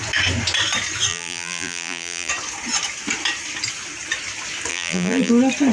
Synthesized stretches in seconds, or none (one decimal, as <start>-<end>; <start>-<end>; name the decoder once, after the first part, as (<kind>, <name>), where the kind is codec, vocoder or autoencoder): 1.1-2.3 (vocoder, BigVGAN v2); 4.7-5.3